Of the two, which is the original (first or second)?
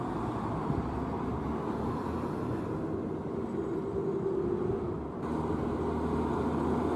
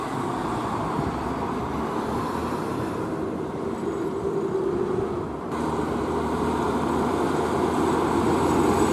first